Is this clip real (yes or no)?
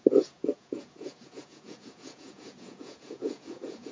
no